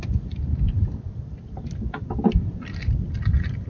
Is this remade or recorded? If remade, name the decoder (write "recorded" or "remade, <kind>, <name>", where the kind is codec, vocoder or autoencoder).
recorded